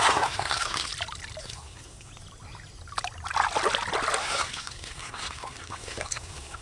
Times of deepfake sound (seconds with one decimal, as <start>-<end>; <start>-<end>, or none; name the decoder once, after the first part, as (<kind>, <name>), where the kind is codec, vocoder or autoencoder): 0.0-0.9 (codec, SNAC); 1.4-2.1; 4.2-6.6